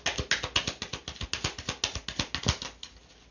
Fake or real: real